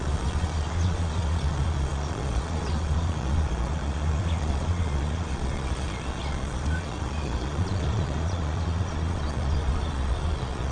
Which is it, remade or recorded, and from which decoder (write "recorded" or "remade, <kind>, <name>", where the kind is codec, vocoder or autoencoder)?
remade, vocoder, Vocos